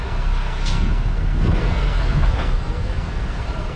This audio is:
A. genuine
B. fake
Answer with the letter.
B